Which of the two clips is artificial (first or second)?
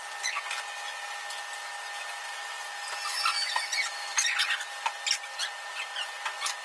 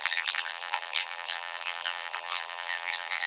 second